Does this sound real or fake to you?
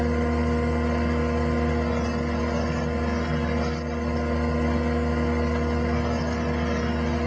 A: real